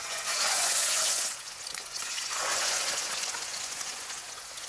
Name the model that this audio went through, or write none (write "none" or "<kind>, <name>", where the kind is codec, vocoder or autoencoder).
vocoder, Vocos